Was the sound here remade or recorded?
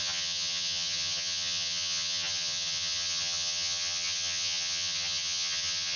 remade